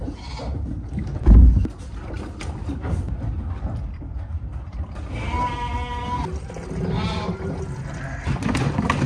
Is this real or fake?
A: real